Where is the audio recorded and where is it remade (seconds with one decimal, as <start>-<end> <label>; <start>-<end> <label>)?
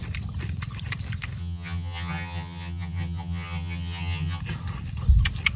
0.0-1.4 recorded; 1.4-4.4 remade; 4.4-5.6 recorded